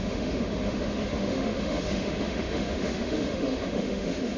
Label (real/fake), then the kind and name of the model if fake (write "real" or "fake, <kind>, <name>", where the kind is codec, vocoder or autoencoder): fake, autoencoder, DAC-VAE